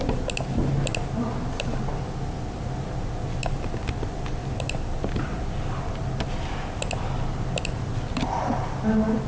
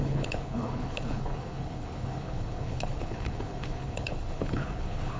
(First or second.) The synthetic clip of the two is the second